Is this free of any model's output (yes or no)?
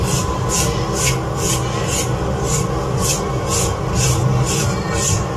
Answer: no